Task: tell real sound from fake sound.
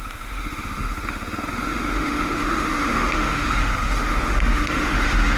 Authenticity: fake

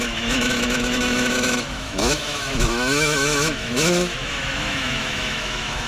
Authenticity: fake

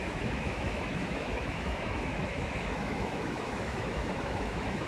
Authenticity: fake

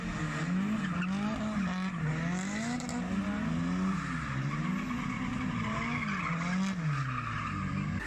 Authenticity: real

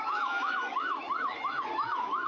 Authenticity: fake